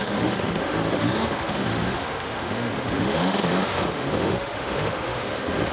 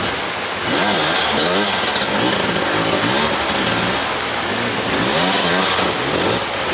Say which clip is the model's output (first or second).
first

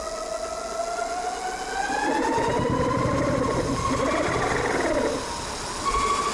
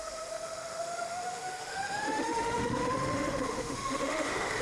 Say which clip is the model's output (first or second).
second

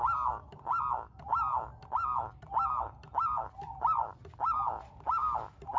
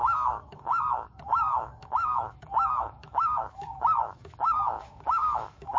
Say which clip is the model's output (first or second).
second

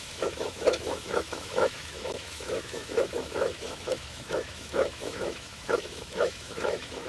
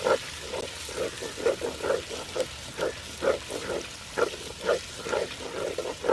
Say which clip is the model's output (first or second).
first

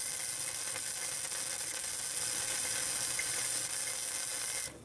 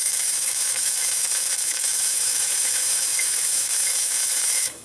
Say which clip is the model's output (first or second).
second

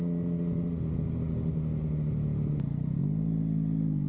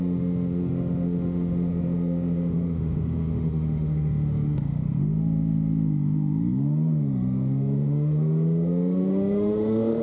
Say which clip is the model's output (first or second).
second